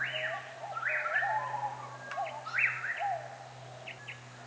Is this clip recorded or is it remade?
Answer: recorded